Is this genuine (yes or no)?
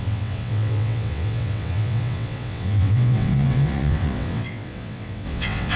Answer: no